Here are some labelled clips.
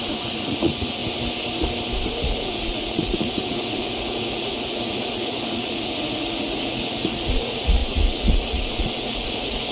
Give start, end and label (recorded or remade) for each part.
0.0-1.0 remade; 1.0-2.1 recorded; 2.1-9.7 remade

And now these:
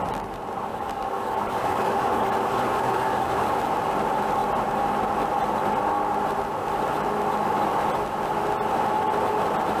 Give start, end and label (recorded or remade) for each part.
0.0-0.7 recorded; 0.7-3.5 remade; 3.5-9.8 recorded

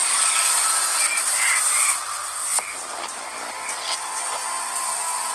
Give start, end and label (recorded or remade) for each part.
0.0-5.3 recorded

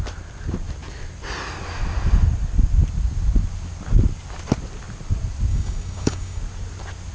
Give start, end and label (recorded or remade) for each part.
0.0-5.5 recorded; 5.5-6.4 remade; 6.4-7.1 recorded

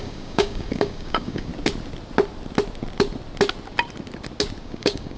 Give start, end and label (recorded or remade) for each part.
0.0-1.5 remade; 1.5-4.6 recorded; 4.6-5.2 remade

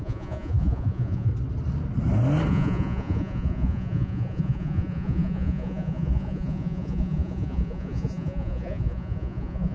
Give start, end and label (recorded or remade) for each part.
0.0-1.3 remade; 1.3-2.5 recorded; 2.5-9.7 remade

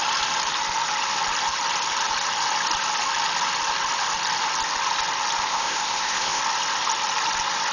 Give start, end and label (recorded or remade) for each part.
0.0-5.4 recorded; 5.4-6.4 remade; 6.4-7.7 recorded